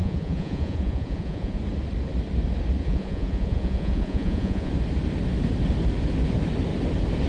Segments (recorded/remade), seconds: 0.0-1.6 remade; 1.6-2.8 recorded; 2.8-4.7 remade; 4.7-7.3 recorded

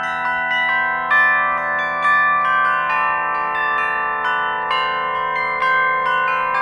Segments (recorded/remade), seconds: 0.0-6.6 recorded

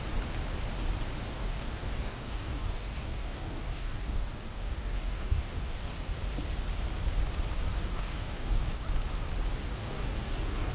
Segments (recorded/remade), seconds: 0.0-1.3 recorded; 1.3-5.9 remade; 5.9-7.7 recorded; 7.7-8.8 remade; 8.8-9.7 recorded; 9.7-10.7 remade

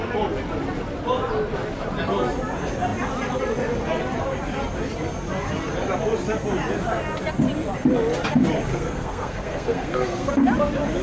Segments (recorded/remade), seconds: 0.0-8.7 recorded; 8.7-10.3 remade; 10.3-11.0 recorded

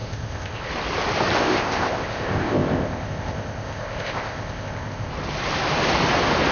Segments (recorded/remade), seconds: 0.0-0.7 remade; 0.7-1.4 recorded; 1.4-5.1 remade; 5.1-6.5 recorded

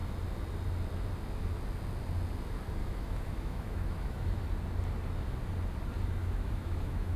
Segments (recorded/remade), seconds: 0.0-2.8 recorded; 2.8-4.4 remade; 4.4-6.2 recorded; 6.2-7.2 remade

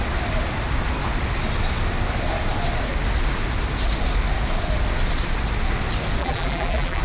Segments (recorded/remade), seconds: 0.0-6.2 recorded; 6.2-7.0 remade

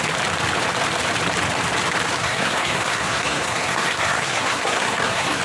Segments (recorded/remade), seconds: 0.0-2.2 recorded; 2.2-5.4 remade